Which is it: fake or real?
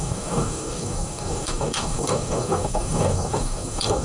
fake